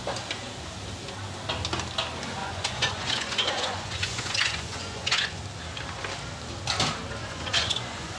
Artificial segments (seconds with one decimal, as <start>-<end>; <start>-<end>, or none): 2.4-5.4; 7.2-8.2